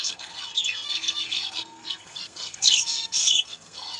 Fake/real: fake